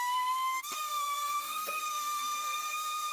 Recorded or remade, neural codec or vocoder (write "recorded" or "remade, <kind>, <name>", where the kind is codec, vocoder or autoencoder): remade, codec, SNAC